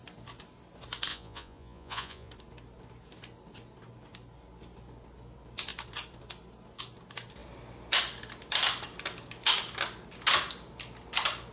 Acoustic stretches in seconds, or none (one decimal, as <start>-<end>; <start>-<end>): 0.0-1.1; 2.3-11.5